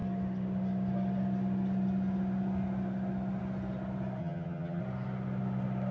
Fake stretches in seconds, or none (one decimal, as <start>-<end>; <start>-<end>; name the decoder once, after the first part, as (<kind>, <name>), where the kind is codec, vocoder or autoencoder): 4.2-4.8 (vocoder, HiFi-GAN)